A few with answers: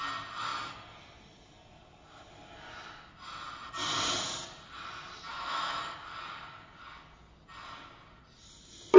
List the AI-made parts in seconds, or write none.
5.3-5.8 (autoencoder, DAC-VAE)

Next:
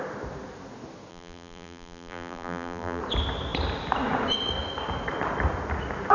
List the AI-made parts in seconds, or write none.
1.1-3.0 (vocoder, BigVGAN v2)

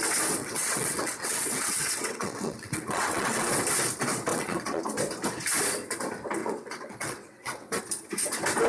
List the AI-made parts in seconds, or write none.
0.4-3.5 (vocoder, WaveNeXt); 4.3-4.8; 6.4-7.8

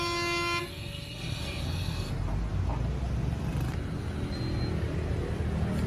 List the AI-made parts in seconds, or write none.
0.7-2.1 (codec, SNAC)

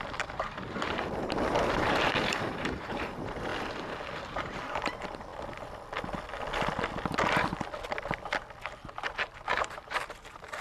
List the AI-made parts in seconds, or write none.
0.0-3.5 (vocoder, BigVGAN v2); 4.3-5.3; 9.0-10.6

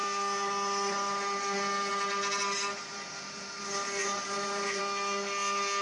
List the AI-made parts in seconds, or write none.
4.0-4.8 (vocoder, BigVGAN v2)

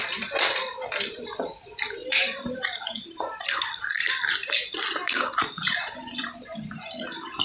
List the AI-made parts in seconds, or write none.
2.0-3.4 (vocoder, BigVGAN v2); 5.0-6.7

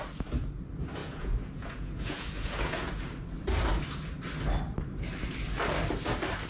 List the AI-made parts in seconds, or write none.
1.0-2.9 (vocoder, Vocos)